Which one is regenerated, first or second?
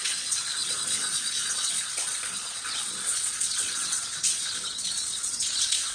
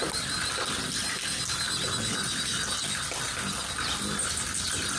first